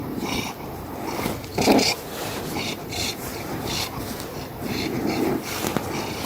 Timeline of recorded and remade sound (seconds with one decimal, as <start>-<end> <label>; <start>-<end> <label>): 0.0-0.9 remade; 0.9-1.5 recorded; 1.5-5.3 remade; 5.3-6.3 recorded